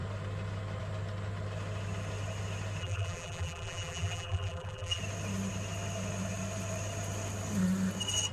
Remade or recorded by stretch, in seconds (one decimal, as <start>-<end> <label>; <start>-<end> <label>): 0.0-2.8 recorded; 2.8-5.0 remade; 5.0-8.3 recorded

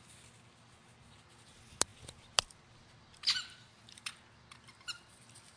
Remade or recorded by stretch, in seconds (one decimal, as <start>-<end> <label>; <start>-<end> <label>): 0.0-5.6 recorded

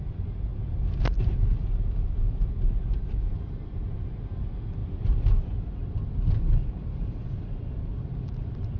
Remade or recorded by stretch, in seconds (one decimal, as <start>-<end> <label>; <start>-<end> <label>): 0.0-0.5 remade; 0.5-2.9 recorded; 2.9-4.8 remade; 4.8-5.7 recorded; 5.7-8.8 remade